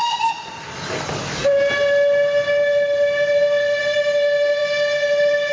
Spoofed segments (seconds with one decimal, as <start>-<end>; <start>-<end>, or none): none

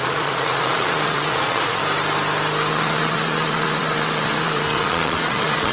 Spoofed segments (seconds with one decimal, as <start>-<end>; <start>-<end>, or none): 0.0-1.8; 2.7-5.7

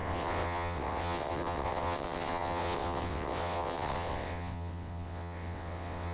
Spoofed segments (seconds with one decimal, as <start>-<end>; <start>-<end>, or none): 0.0-6.1

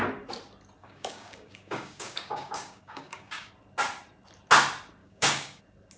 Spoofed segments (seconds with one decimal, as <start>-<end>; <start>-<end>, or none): 0.8-3.5; 5.0-5.6

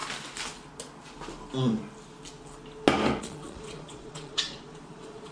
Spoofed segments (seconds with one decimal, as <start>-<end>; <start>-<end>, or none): 3.2-5.3

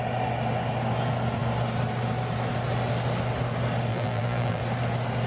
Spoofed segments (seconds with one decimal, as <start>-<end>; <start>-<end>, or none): 3.9-4.6

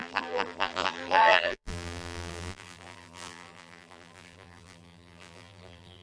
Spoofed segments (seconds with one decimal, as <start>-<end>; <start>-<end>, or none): 0.0-6.0

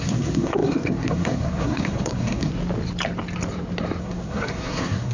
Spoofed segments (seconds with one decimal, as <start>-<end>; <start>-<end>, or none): 0.0-2.5; 4.0-5.1